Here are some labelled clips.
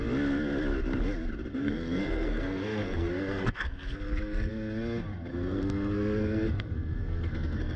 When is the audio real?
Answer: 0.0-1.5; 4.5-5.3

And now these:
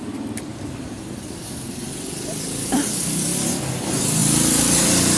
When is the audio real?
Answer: 0.0-0.5; 3.6-4.2

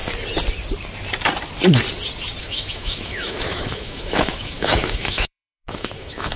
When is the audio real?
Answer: 0.0-2.4

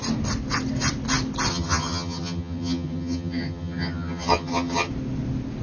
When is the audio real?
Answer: 0.0-1.5; 4.9-5.6

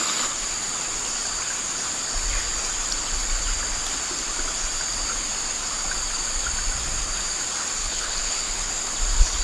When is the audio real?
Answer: 0.0-7.8; 8.7-9.4

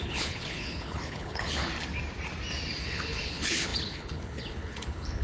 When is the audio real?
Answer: 1.7-2.8

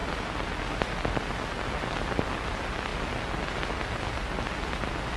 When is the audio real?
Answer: 0.0-5.2

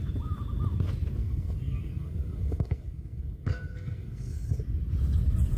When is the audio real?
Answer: 0.0-1.2; 4.6-5.6